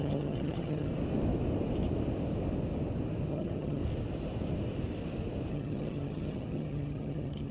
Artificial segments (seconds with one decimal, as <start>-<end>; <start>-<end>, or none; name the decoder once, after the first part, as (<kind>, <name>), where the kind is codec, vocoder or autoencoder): 0.0-0.9 (vocoder, HiFi-GAN); 3.3-3.8; 5.5-7.5